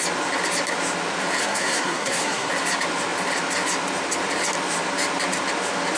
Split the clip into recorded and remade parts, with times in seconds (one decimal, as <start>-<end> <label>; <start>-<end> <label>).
0.0-1.4 recorded; 1.4-2.5 remade; 2.5-6.0 recorded